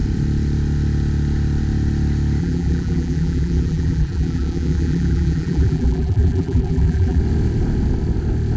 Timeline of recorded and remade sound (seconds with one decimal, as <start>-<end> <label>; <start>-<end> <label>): 0.0-2.4 recorded; 2.4-7.2 remade; 7.2-8.6 recorded